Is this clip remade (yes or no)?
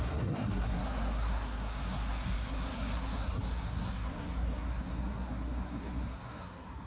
yes